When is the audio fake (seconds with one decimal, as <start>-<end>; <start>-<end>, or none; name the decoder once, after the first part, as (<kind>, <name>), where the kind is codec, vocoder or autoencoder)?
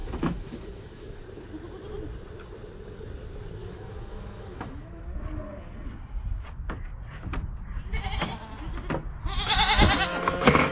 0.0-1.2 (autoencoder, DAC-VAE); 3.6-5.0; 10.1-10.7